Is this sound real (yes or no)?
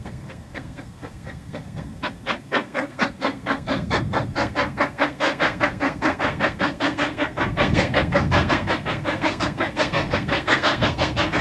no